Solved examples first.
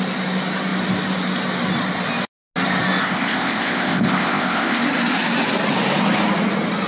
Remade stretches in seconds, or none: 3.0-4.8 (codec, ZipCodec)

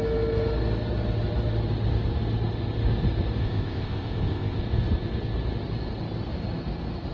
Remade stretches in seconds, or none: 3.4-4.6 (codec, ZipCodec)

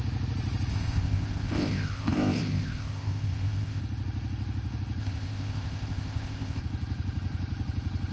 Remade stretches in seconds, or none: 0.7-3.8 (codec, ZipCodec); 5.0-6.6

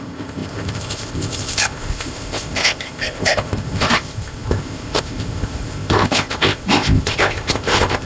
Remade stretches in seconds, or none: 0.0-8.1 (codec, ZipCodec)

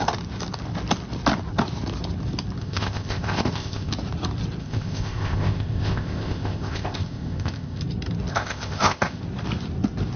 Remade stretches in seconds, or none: 2.6-3.9 (codec, ZipCodec); 4.6-7.8; 8.3-9.2

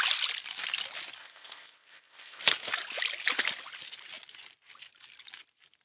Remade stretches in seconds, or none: 1.2-2.4 (codec, ZipCodec)